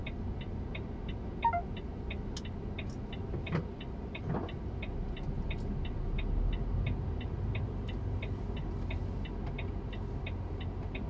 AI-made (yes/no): no